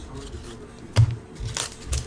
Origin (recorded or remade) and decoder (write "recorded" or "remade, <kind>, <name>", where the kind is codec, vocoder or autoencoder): recorded